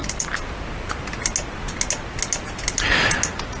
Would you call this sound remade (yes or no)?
no